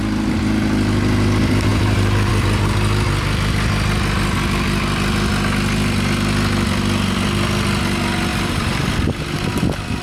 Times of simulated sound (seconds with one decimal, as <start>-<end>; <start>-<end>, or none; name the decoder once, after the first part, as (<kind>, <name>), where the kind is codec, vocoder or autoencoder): 1.7-2.3 (vocoder, BigVGAN v2); 8.3-8.9